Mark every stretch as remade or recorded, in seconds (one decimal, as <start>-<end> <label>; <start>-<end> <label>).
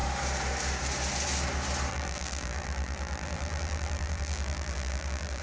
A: 0.0-1.9 recorded; 1.9-5.4 remade